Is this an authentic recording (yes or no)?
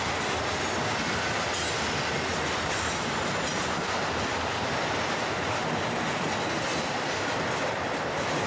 yes